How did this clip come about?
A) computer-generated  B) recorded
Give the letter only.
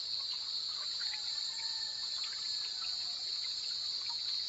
B